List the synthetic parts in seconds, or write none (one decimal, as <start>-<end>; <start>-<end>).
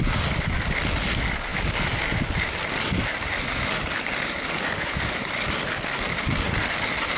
none